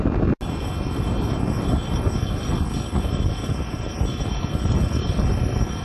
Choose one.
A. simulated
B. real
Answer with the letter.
B